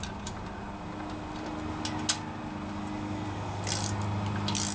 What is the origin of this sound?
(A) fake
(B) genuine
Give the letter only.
B